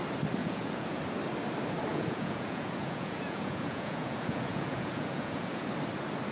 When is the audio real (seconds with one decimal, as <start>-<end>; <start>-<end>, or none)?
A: 0.0-0.4; 1.0-1.9; 5.7-6.3